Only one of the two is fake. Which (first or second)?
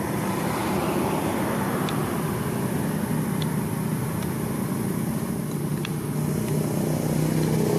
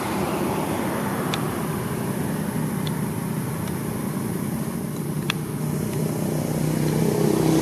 second